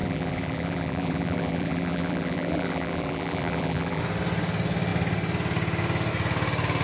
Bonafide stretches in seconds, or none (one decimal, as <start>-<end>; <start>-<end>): 4.0-6.8